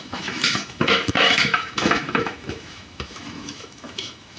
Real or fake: fake